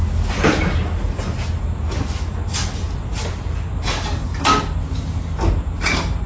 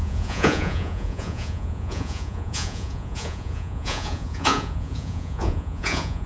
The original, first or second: first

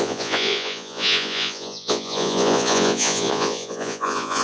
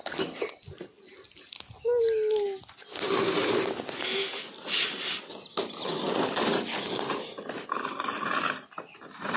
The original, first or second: second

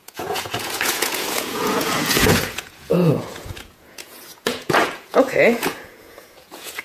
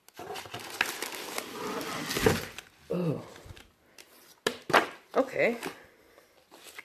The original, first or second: second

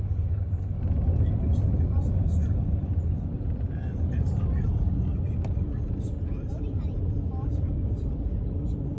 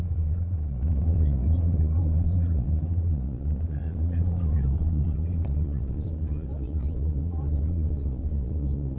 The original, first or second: first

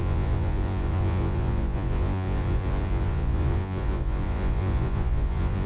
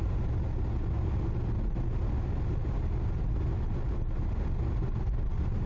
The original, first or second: second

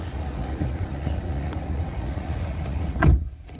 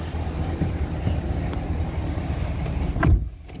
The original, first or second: second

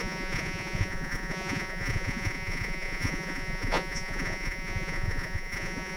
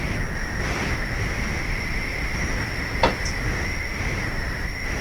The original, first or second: second